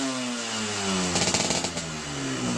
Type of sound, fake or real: real